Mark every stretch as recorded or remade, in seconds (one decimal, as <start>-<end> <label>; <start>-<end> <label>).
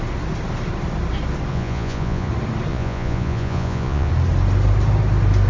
0.0-1.5 recorded; 1.5-2.3 remade; 2.3-2.7 recorded; 2.7-4.1 remade; 4.1-5.5 recorded